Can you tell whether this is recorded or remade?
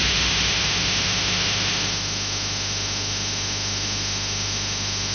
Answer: remade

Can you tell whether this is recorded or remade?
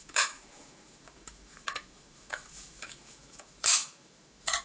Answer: remade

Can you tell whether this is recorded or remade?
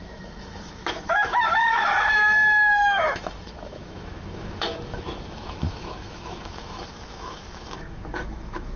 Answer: remade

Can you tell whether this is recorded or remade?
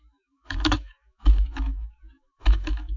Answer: remade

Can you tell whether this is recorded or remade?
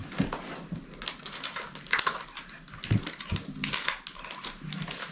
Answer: recorded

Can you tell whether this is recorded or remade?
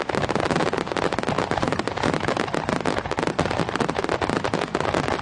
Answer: recorded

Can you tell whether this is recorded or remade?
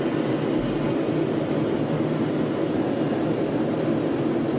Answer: recorded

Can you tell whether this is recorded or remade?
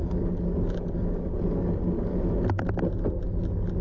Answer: recorded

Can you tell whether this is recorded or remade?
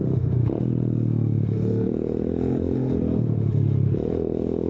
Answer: remade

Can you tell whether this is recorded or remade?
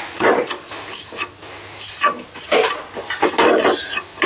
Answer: recorded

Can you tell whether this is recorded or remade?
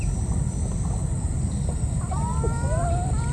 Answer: recorded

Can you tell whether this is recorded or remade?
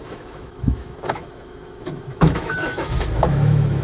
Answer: remade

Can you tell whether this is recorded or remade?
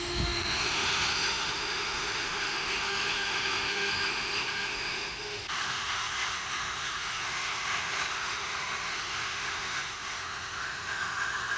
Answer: remade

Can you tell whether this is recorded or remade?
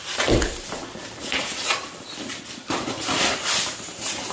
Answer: recorded